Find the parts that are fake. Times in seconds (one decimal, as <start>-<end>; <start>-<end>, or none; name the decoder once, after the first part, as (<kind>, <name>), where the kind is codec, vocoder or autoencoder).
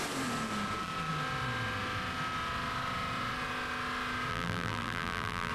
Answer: 4.3-5.5 (vocoder, BigVGAN v2)